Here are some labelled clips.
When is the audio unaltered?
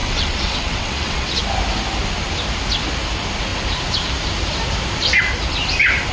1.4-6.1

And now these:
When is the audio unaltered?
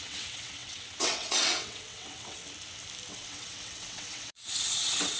2.4-3.1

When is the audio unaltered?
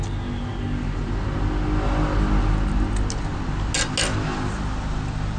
0.0-5.4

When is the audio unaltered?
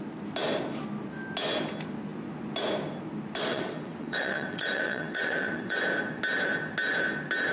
0.0-3.5; 5.8-7.5